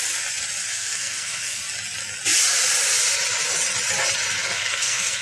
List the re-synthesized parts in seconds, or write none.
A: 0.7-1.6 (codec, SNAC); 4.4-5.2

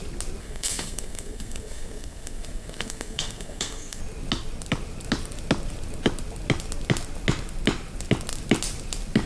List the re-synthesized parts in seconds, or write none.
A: 0.4-4.0 (codec, SNAC)

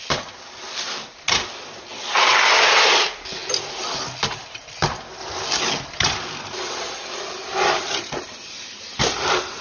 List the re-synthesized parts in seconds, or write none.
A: none

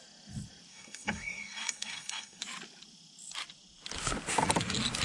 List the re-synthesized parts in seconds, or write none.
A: 0.7-2.4 (codec, SNAC)

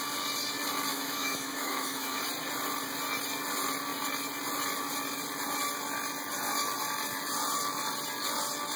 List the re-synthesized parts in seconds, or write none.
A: 0.9-2.2 (autoencoder, DAC-VAE)

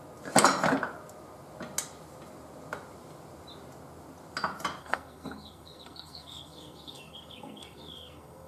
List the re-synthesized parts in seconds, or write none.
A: 4.8-8.5 (codec, SNAC)

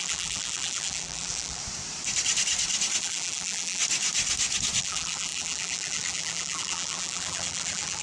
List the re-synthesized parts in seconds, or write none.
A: 0.0-1.6 (vocoder, BigVGAN v2); 3.0-3.8; 4.8-8.0

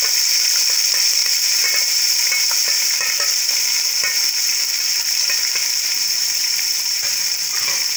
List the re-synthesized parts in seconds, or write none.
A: 1.2-4.7 (vocoder, BigVGAN v2); 5.9-8.0